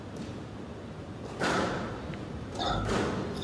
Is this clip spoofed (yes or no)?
no